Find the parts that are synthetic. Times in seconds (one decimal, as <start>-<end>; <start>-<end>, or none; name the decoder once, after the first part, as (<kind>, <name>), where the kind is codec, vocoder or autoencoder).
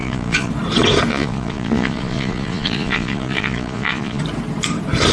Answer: 0.0-0.5 (vocoder, Vocos); 1.1-4.2